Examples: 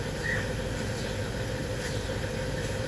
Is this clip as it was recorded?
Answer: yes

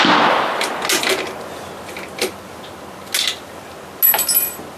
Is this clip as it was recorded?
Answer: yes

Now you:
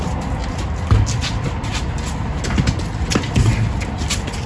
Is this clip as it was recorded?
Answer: yes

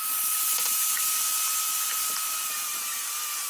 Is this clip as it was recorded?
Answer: yes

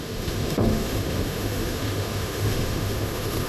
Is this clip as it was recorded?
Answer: no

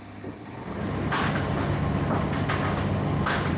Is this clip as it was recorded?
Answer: yes